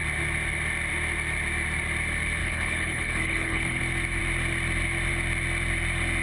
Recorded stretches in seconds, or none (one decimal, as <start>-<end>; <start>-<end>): 0.0-2.4; 3.8-6.2